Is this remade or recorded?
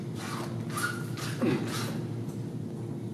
recorded